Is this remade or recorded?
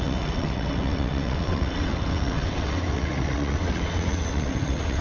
remade